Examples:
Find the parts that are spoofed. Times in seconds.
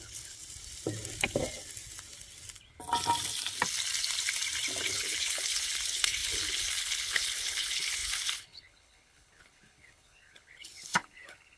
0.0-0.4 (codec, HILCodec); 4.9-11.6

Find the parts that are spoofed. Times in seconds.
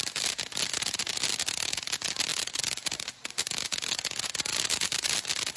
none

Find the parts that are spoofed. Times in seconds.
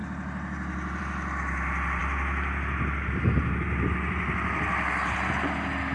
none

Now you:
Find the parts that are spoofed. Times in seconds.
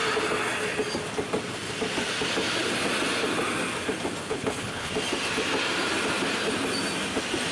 4.2-4.9 (codec, HILCodec)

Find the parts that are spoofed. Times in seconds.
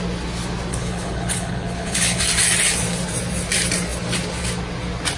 0.7-2.2 (codec, HILCodec)